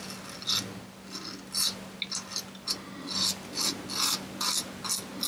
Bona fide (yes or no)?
yes